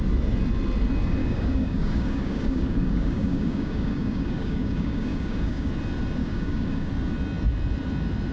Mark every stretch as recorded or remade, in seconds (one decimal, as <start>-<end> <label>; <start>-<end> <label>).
0.0-1.2 recorded; 1.2-5.7 remade; 5.7-6.2 recorded; 6.2-6.9 remade; 6.9-8.3 recorded